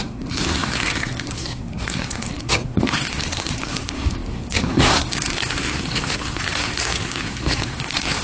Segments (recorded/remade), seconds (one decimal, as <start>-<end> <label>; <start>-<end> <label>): 0.0-8.2 remade